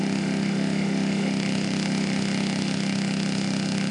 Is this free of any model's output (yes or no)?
no